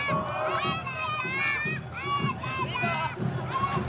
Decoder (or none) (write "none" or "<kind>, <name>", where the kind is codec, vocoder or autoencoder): none